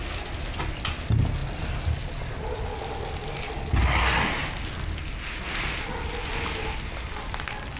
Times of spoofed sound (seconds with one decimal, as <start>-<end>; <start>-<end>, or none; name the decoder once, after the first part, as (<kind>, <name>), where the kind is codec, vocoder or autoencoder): none